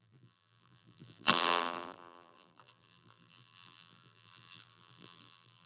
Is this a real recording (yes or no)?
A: no